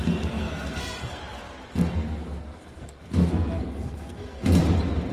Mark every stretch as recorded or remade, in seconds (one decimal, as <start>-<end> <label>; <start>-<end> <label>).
0.0-1.2 remade; 1.2-1.7 recorded; 1.7-4.6 remade; 4.6-5.1 recorded